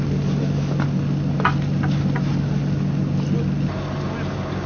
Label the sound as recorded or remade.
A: recorded